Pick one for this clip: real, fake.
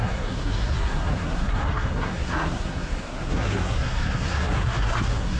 fake